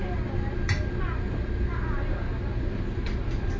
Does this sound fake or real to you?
real